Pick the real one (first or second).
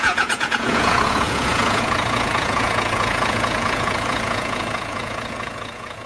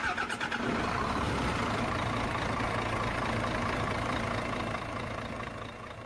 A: second